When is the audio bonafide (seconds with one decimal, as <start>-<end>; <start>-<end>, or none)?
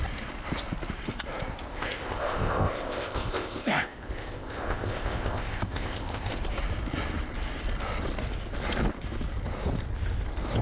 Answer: 0.0-1.7; 6.3-10.6